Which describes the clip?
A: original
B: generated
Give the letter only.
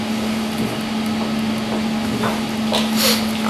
A